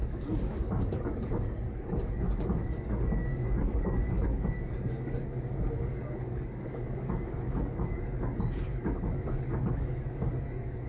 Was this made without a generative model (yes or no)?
no